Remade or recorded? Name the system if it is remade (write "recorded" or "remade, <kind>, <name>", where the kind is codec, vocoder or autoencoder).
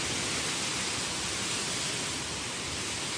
recorded